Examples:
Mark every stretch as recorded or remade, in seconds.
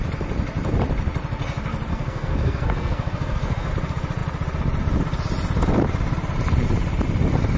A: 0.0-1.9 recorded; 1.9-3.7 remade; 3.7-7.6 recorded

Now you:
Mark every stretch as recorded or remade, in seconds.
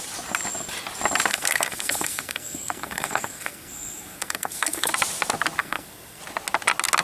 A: 0.0-1.3 recorded; 1.3-4.9 remade; 4.9-5.6 recorded; 5.6-6.2 remade; 6.2-7.0 recorded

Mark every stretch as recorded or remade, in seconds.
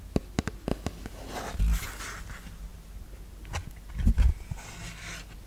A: 0.0-5.5 recorded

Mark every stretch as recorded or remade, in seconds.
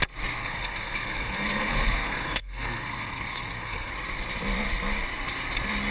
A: 0.0-0.4 recorded; 0.4-3.9 remade; 3.9-5.9 recorded